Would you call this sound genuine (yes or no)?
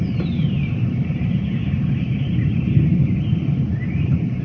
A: no